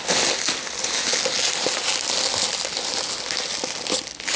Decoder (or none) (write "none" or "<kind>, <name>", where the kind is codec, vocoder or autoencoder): none